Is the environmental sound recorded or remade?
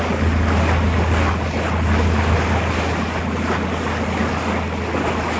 recorded